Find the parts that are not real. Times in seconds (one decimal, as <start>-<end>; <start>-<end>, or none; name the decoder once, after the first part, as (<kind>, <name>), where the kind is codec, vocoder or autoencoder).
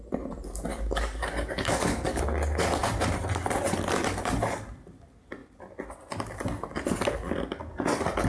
0.7-2.2 (codec, DAC)